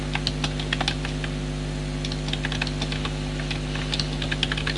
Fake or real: real